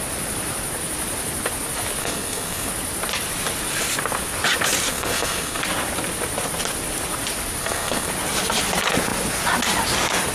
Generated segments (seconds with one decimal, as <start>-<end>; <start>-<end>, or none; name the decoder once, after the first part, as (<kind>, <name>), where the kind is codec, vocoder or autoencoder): 2.0-2.7 (codec, SNAC); 4.9-5.6; 7.6-8.1